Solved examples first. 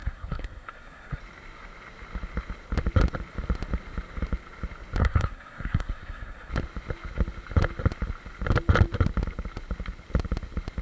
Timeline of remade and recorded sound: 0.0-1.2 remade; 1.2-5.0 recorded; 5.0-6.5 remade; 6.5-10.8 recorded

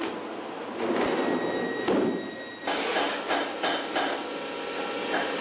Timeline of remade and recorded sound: 0.0-5.4 recorded

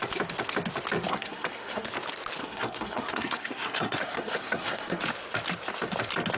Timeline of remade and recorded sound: 0.0-1.1 recorded; 1.1-1.9 remade; 1.9-2.4 recorded; 2.4-5.0 remade; 5.0-6.4 recorded

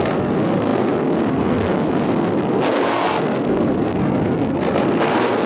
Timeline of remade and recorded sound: 0.0-5.5 remade

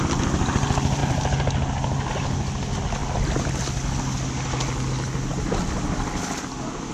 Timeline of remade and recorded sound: 0.0-6.9 recorded